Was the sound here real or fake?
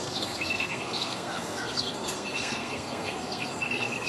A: fake